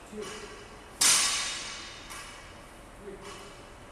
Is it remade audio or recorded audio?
recorded